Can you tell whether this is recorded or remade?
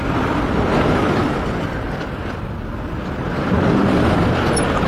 recorded